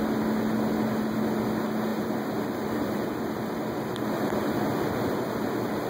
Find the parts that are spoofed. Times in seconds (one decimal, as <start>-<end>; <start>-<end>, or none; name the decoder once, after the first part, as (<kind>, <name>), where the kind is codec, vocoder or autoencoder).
1.9-3.8 (vocoder, BigVGAN v2)